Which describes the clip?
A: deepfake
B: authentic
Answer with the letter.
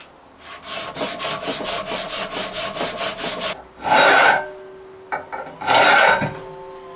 B